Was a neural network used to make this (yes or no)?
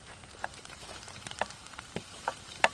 yes